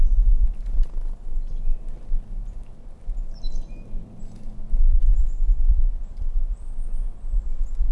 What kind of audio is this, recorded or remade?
recorded